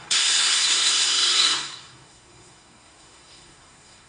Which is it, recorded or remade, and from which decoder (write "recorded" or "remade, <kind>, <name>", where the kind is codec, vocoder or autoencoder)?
remade, codec, SNAC